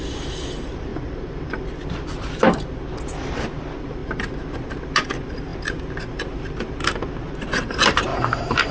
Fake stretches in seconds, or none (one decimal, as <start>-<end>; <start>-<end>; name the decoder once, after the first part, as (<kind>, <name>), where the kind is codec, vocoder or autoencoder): 0.9-1.5 (vocoder, BigVGAN v2); 8.1-8.7